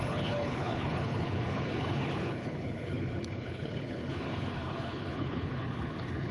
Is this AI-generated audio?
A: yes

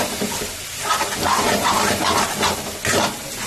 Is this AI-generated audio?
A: no